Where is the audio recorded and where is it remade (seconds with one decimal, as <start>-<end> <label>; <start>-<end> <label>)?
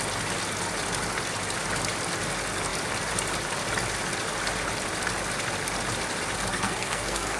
0.0-6.5 recorded; 6.5-7.4 remade